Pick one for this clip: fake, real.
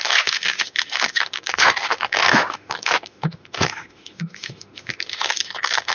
fake